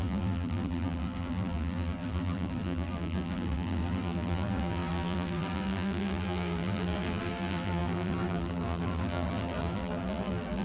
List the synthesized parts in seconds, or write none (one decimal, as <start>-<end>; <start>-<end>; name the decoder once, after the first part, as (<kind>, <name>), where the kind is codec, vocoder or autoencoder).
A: 0.0-10.6 (vocoder, BigVGAN v2)